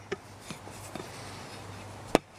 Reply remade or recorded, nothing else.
recorded